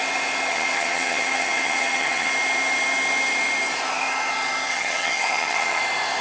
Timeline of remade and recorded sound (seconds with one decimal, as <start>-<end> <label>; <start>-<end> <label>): 0.0-0.5 recorded; 0.5-2.3 remade; 2.3-4.7 recorded; 4.7-5.8 remade; 5.8-6.2 recorded